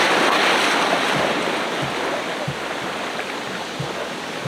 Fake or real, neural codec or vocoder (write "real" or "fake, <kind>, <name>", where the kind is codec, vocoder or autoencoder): real